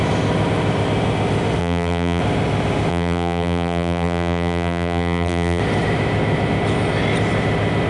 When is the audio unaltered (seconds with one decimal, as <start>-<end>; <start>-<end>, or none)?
0.0-1.6; 2.2-2.9; 5.6-7.9